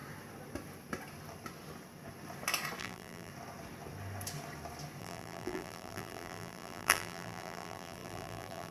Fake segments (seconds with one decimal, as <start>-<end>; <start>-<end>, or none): 2.8-3.3; 5.0-8.7